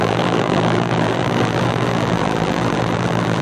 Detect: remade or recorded remade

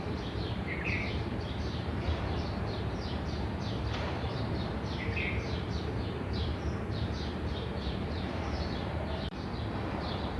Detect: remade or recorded remade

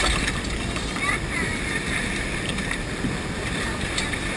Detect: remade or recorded remade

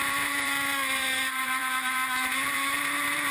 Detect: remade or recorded remade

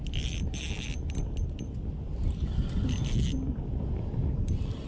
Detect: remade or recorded recorded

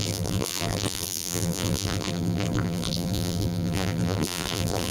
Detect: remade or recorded remade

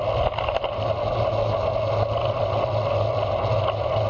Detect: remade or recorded recorded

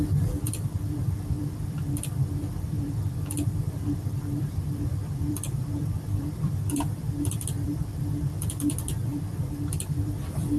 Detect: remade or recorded remade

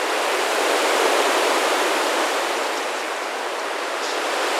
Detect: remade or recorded remade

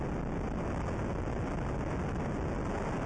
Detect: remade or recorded recorded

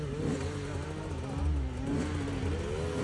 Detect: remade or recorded recorded